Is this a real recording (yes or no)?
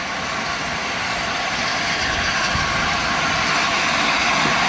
yes